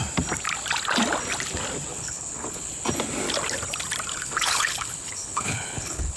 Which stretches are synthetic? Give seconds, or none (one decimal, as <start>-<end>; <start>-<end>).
1.9-2.7; 4.1-6.2